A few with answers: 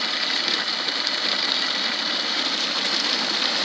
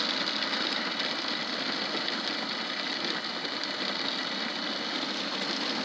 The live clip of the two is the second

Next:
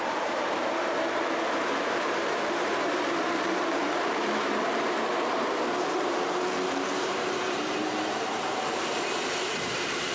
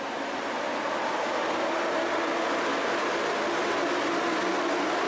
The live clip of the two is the second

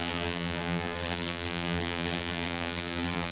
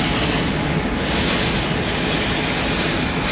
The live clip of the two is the second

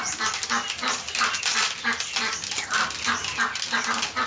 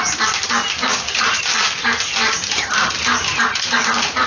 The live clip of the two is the first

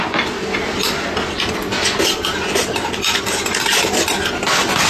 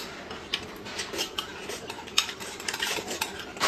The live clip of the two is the first